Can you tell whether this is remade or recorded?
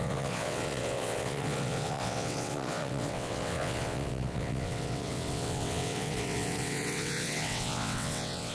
remade